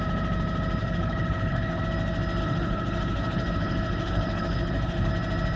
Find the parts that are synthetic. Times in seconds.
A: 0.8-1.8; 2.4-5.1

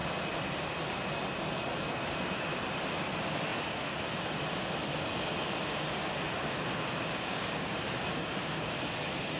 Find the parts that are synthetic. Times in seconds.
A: 7.1-8.9

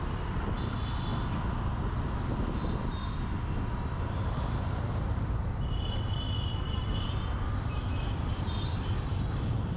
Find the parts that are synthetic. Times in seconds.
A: 0.0-1.1; 5.1-9.8

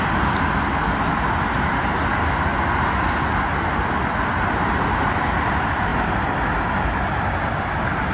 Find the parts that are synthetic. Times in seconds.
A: none

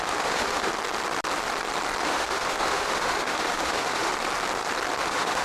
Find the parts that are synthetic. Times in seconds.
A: 0.0-0.7; 2.0-4.1; 5.0-5.4

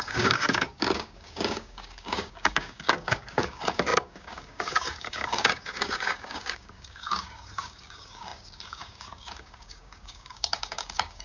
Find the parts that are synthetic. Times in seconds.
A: 0.0-11.2

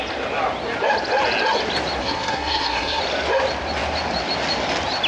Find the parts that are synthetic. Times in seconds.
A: 2.0-3.0